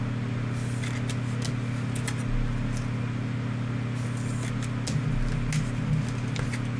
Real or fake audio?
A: real